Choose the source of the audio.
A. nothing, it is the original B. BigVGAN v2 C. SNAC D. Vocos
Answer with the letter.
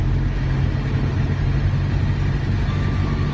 A